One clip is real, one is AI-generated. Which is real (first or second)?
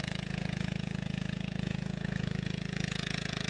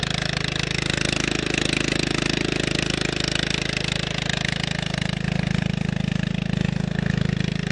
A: second